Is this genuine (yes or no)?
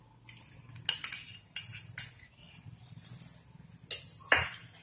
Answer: yes